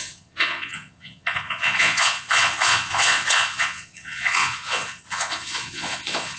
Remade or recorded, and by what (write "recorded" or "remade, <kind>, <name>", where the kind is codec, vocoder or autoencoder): remade, vocoder, Vocos